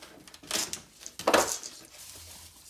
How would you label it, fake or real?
real